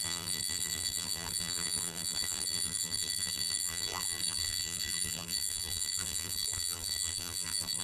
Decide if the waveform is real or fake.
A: fake